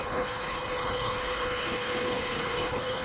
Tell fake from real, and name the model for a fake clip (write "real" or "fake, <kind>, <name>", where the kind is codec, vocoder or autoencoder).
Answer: fake, codec, HILCodec